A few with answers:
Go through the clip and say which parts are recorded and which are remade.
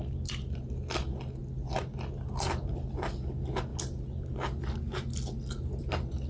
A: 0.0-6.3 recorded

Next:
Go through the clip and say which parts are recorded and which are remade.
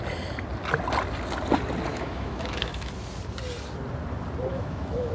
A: 0.0-1.9 recorded; 1.9-2.9 remade; 2.9-4.5 recorded; 4.5-5.1 remade